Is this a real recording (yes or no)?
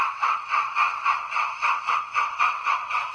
no